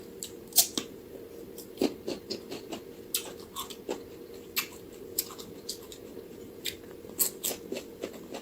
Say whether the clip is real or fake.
real